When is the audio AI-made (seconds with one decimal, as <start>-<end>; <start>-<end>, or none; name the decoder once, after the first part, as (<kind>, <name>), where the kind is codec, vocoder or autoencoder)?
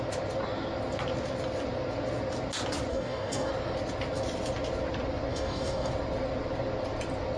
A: 2.9-3.5 (codec, DAC); 5.3-5.9